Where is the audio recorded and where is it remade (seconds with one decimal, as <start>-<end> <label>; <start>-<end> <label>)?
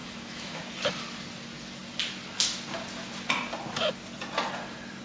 0.0-0.6 remade; 0.6-5.0 recorded